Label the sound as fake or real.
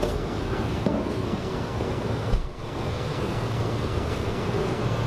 fake